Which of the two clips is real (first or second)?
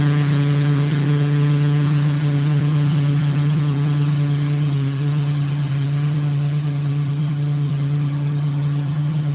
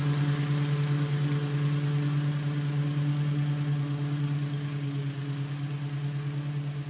second